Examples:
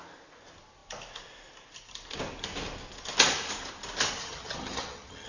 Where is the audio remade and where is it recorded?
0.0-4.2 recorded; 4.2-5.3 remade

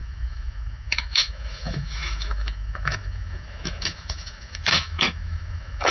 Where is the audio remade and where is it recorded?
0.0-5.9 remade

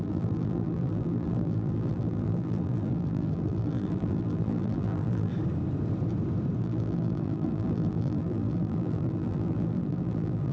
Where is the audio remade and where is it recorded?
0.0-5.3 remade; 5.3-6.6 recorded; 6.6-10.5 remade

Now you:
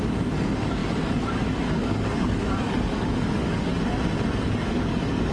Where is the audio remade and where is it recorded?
0.0-3.7 remade; 3.7-4.4 recorded; 4.4-5.3 remade

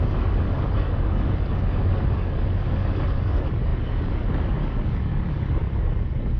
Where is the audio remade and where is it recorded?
0.0-6.4 remade

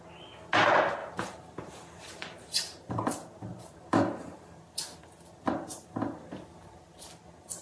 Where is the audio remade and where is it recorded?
0.0-1.0 recorded; 1.0-3.1 remade; 3.1-3.5 recorded; 3.5-4.6 remade; 4.6-7.6 recorded